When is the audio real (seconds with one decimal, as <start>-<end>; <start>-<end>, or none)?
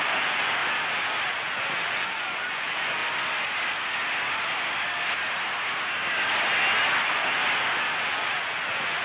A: 0.6-1.3; 3.0-7.0; 7.4-8.1